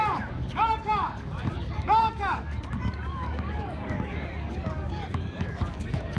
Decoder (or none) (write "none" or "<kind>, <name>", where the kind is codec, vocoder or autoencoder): codec, DAC